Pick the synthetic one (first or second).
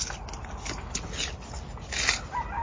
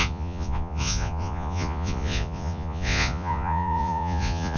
second